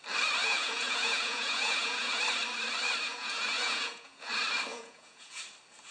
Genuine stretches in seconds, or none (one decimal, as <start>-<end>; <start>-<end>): 0.0-0.4; 2.2-3.1; 4.3-4.7; 5.4-5.9